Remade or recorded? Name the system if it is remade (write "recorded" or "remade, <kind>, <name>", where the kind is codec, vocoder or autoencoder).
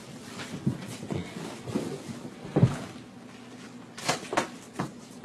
recorded